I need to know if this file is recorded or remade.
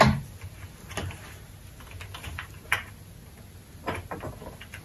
recorded